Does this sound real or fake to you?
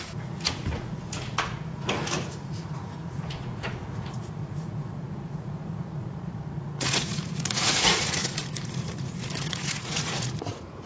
fake